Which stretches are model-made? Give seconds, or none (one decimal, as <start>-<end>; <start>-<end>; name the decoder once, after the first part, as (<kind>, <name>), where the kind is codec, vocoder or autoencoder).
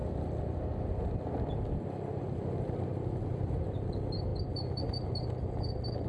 none